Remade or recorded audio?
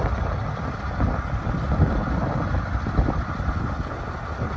recorded